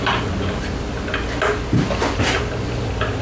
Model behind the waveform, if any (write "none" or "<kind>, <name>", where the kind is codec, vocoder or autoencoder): none